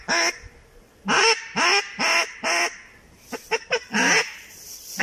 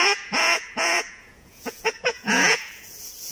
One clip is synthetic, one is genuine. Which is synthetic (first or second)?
second